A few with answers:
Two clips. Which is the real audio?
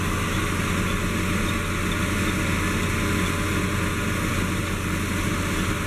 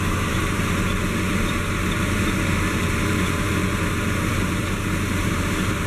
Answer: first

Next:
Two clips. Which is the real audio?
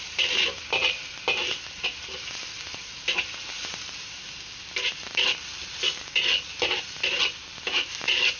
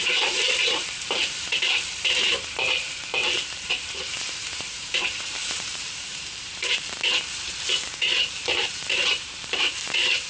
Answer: first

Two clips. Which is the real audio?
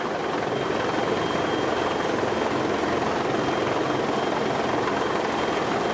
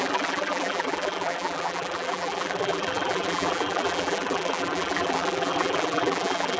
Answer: first